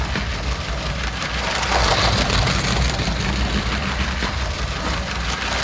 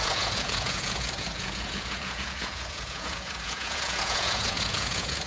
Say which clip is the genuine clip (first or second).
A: first